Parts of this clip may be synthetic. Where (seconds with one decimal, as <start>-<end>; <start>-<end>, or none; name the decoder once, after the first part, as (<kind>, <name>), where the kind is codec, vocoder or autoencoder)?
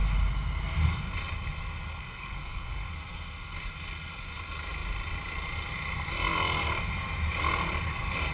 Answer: 2.0-2.9 (codec, SNAC)